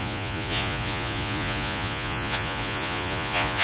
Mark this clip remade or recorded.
remade